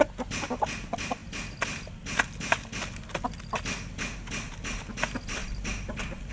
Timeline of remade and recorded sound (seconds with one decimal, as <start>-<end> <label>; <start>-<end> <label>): 0.0-5.4 recorded; 5.4-6.3 remade